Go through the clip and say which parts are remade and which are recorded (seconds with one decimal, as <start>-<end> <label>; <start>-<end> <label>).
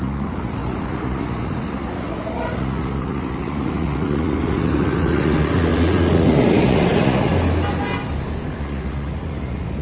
0.0-7.3 remade; 7.3-8.5 recorded; 8.5-9.8 remade